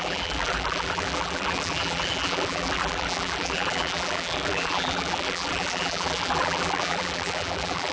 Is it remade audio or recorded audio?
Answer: remade